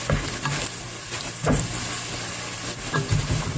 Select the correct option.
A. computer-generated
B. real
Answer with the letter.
B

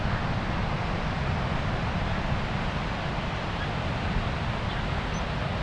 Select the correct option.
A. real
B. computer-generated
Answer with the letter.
A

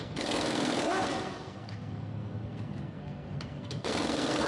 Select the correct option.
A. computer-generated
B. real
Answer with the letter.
A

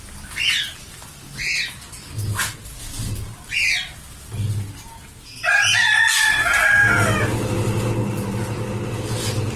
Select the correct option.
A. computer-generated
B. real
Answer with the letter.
B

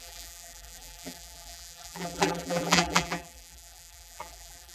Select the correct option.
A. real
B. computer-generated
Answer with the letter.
B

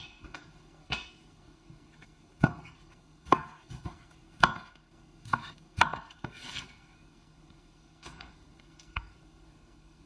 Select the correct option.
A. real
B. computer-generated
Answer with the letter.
B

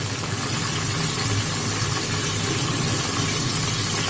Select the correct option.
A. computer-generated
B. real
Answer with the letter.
B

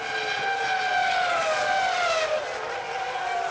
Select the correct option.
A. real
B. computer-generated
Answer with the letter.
A